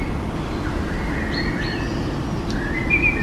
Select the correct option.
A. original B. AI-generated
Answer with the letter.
A